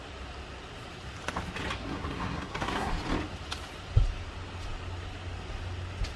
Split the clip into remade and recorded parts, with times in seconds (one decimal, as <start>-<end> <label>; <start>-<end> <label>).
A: 0.0-1.8 recorded; 1.8-2.9 remade; 2.9-6.2 recorded